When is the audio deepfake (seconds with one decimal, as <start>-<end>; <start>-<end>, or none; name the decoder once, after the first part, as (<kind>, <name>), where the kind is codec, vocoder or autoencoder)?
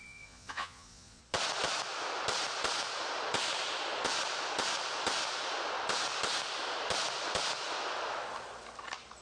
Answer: 0.0-1.2 (vocoder, Vocos)